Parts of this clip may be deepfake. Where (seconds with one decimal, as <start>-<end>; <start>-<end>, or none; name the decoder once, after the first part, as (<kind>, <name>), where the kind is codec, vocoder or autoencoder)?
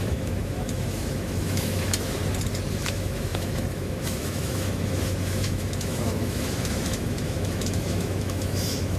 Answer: 0.0-2.2 (autoencoder, DAC-VAE); 2.7-9.0